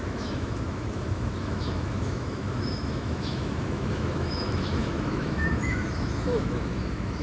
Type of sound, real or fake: fake